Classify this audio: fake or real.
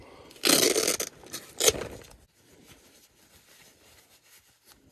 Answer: real